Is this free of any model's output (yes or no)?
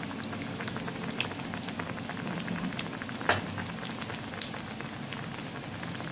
yes